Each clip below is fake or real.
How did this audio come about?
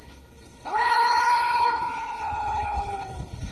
fake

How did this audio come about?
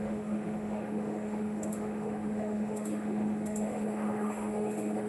fake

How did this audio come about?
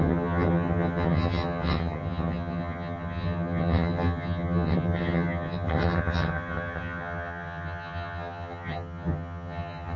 fake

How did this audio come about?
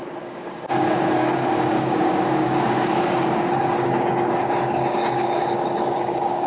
fake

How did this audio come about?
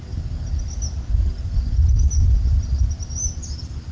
real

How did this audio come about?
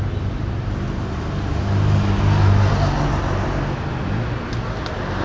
real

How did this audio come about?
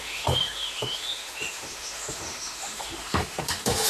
fake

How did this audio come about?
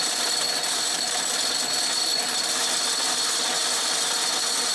real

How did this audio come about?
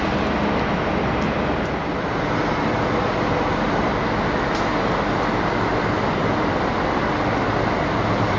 real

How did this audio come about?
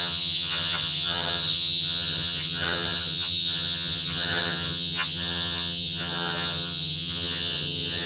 fake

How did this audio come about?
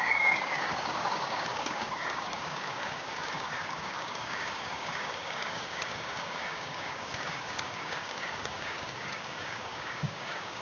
fake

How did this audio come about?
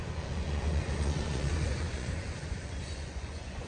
fake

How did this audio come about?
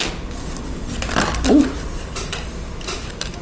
real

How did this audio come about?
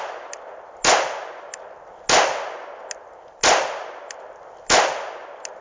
real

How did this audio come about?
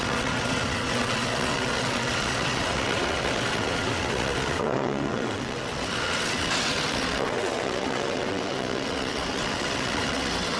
fake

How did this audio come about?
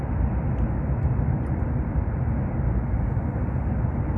real